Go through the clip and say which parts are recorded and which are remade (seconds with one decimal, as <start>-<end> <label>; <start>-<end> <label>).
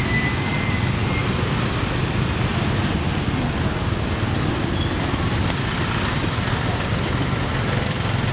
0.0-8.3 recorded